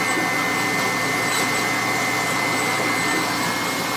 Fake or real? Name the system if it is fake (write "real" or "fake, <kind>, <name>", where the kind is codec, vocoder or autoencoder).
real